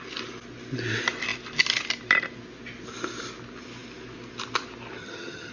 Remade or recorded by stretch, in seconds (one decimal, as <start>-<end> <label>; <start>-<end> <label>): 0.0-5.0 recorded; 5.0-5.5 remade